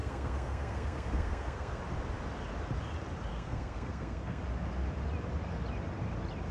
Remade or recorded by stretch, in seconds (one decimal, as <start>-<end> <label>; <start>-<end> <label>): 0.0-1.8 remade; 1.8-3.3 recorded; 3.3-4.4 remade; 4.4-6.5 recorded

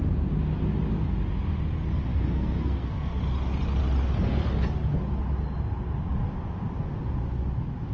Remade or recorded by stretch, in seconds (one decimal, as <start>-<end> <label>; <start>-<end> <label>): 0.0-2.1 recorded; 2.1-3.2 remade; 3.2-7.9 recorded